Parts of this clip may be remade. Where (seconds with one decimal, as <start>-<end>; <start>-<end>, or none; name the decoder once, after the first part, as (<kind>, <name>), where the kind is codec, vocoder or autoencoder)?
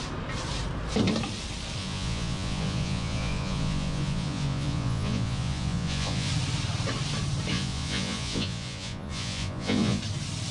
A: 1.8-6.3 (vocoder, Vocos); 7.5-10.0